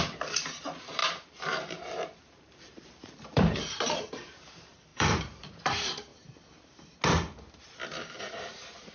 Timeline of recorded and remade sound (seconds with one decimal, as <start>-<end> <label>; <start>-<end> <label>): 0.0-6.1 remade; 6.1-8.2 recorded; 8.2-8.9 remade